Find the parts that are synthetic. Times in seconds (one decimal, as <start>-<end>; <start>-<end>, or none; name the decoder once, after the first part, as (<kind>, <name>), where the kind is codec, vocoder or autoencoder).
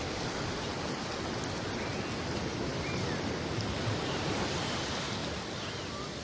none